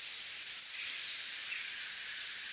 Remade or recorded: recorded